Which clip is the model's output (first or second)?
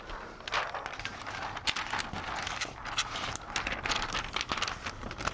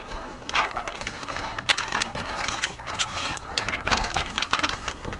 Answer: second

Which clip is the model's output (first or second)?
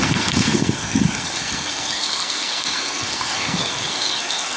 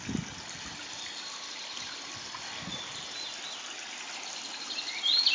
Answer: first